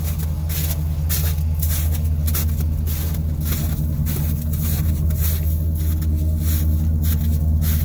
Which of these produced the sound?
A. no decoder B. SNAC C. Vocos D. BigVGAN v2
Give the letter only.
A